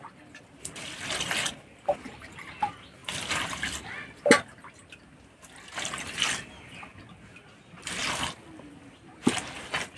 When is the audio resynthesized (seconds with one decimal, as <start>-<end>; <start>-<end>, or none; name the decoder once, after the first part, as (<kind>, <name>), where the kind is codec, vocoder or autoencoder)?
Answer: none